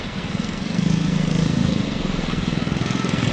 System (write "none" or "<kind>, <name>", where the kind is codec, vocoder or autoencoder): codec, SNAC